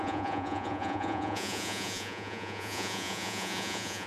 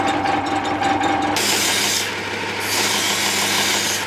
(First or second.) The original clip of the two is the second